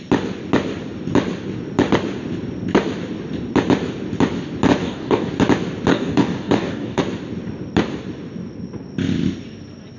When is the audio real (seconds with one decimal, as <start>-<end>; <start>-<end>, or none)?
0.0-4.8; 5.3-5.9; 7.0-10.0